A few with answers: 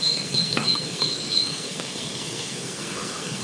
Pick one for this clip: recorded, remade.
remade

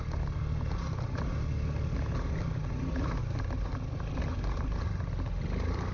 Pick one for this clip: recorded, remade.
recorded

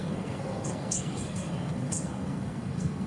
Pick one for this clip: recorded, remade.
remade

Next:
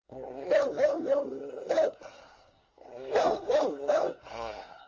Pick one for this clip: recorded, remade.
remade